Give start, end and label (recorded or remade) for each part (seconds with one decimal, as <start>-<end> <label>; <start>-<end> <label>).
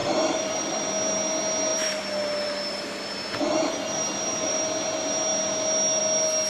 0.0-0.8 remade; 0.8-1.7 recorded; 1.7-4.6 remade; 4.6-6.5 recorded